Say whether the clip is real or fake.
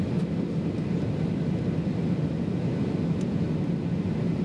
real